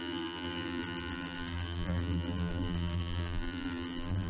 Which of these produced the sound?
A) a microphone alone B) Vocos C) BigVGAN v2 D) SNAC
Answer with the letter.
C